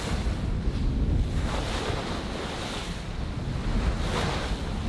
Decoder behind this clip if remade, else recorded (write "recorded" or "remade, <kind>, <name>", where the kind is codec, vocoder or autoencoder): recorded